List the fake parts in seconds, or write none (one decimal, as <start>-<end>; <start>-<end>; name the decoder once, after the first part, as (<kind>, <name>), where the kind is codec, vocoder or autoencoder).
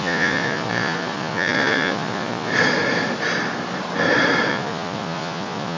0.0-2.5 (vocoder, Vocos); 4.5-5.8